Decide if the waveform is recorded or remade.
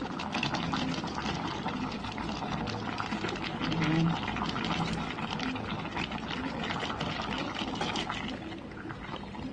recorded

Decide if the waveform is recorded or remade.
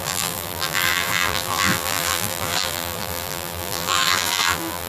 remade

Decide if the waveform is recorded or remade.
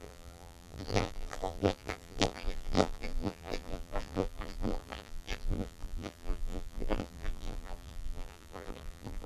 remade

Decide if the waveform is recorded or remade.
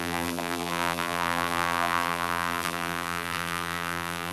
remade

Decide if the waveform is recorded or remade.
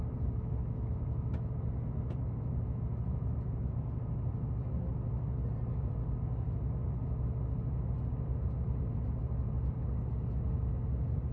recorded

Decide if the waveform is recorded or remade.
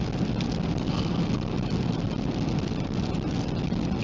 recorded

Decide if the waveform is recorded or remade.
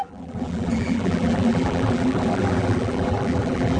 remade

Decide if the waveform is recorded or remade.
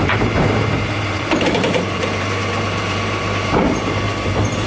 remade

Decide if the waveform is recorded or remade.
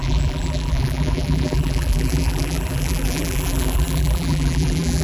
remade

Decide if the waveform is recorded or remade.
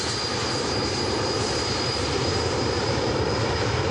remade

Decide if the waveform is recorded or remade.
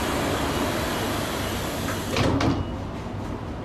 recorded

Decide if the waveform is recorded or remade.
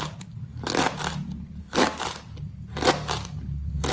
recorded